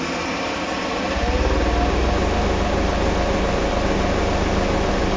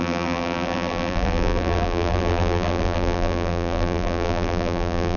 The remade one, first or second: second